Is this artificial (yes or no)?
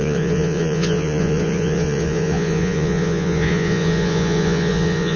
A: yes